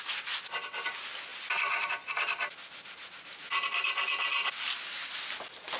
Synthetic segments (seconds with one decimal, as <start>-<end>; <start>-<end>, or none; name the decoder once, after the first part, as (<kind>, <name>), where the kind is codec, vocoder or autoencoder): none